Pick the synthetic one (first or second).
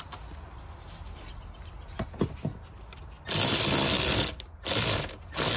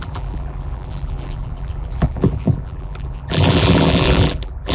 second